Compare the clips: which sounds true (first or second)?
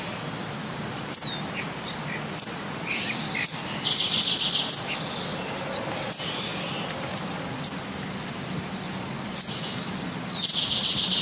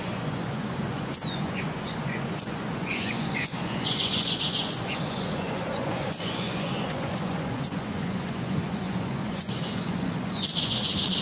first